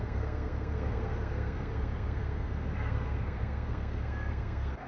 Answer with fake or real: fake